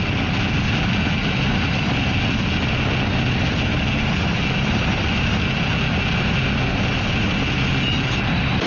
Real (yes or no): yes